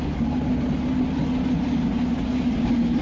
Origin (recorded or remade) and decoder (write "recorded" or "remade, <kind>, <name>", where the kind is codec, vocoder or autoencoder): recorded